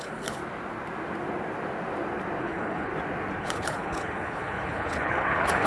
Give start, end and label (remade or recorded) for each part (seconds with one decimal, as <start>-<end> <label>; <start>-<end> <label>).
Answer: 0.0-0.4 remade; 0.4-2.4 recorded; 2.4-2.9 remade; 2.9-3.4 recorded; 3.4-5.7 remade